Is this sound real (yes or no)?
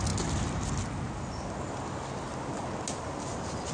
yes